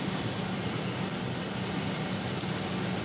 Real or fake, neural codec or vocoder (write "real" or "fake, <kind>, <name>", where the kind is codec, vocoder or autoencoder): real